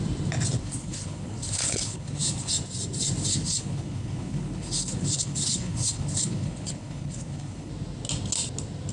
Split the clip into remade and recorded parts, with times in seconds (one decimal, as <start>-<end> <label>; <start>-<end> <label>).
0.0-0.6 recorded; 0.6-2.5 remade; 2.5-3.3 recorded; 3.3-7.7 remade; 7.7-8.9 recorded